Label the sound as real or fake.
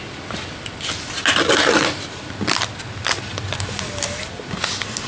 real